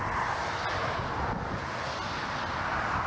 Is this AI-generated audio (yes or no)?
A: no